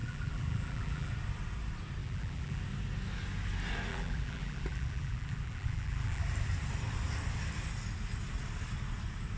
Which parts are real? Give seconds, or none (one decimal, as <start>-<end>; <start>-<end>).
1.1-2.0; 2.6-3.9; 6.2-9.4